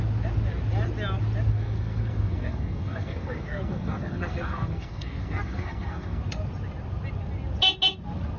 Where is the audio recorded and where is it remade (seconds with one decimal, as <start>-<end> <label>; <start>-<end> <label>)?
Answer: 0.0-1.5 recorded; 1.5-6.2 remade; 6.2-8.4 recorded